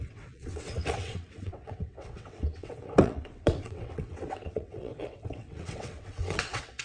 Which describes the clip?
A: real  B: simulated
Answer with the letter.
B